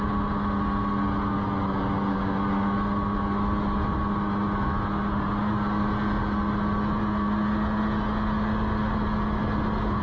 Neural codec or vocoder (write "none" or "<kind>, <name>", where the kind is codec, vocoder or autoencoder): none